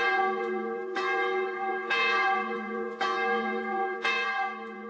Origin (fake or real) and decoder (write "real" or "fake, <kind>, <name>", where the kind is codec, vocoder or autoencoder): fake, vocoder, Vocos